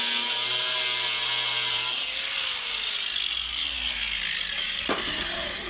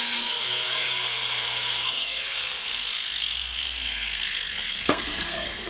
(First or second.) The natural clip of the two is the first